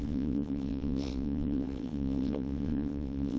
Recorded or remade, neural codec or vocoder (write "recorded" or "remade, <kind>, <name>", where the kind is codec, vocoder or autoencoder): remade, vocoder, WaveNeXt